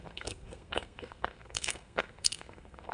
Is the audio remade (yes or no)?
yes